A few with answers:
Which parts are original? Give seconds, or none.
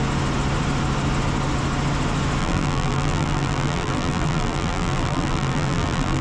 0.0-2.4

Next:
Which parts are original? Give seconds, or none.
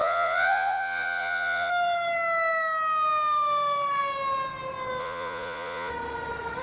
1.7-5.0; 5.9-6.6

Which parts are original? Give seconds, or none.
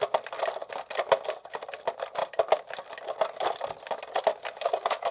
0.0-5.1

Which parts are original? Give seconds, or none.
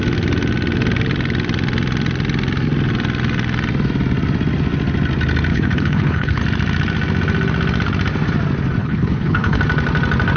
0.0-5.5; 6.4-8.8; 9.6-10.4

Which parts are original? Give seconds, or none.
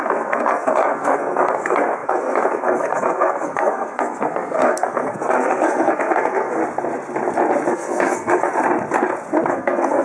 6.6-7.7; 8.5-9.5